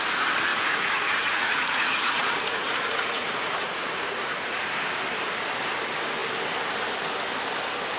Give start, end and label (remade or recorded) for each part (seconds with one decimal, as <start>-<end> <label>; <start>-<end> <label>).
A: 0.0-0.5 recorded; 0.5-4.6 remade; 4.6-8.0 recorded

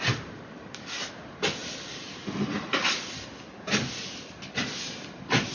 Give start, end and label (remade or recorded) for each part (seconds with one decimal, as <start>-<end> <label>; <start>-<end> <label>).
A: 0.0-5.5 recorded

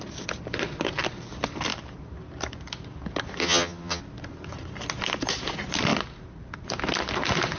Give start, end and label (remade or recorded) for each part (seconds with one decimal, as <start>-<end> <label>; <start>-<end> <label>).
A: 0.0-3.4 recorded; 3.4-4.0 remade; 4.0-7.6 recorded

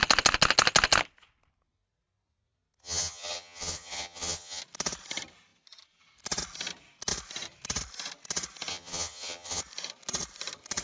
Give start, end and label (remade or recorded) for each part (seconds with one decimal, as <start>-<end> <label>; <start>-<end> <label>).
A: 0.0-2.8 recorded; 2.8-4.6 remade; 4.6-8.7 recorded; 8.7-9.6 remade; 9.6-10.8 recorded

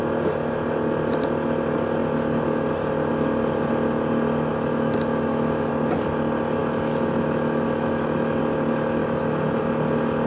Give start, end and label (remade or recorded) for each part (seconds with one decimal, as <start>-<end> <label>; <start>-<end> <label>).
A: 0.0-4.5 recorded; 4.5-5.7 remade; 5.7-6.6 recorded; 6.6-8.4 remade; 8.4-9.0 recorded; 9.0-9.6 remade; 9.6-10.3 recorded

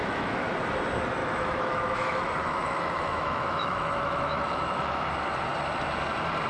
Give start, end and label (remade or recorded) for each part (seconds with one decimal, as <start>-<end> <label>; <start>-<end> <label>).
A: 0.0-0.5 remade; 0.5-1.2 recorded; 1.2-5.1 remade; 5.1-6.5 recorded

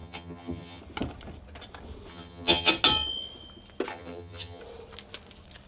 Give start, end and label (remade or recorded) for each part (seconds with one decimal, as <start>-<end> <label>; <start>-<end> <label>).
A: 0.0-0.8 remade; 0.8-2.1 recorded; 2.1-2.7 remade; 2.7-3.9 recorded; 3.9-4.6 remade; 4.6-5.7 recorded

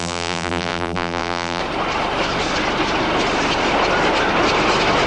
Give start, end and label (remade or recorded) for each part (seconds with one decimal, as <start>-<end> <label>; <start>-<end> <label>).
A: 0.0-1.6 remade; 1.6-5.1 recorded